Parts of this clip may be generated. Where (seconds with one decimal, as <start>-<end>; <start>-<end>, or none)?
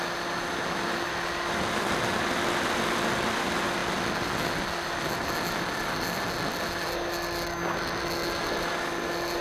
none